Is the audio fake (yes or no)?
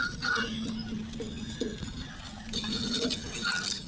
no